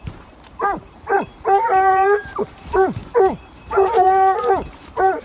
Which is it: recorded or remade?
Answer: remade